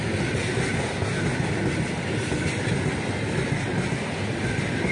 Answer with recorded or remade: recorded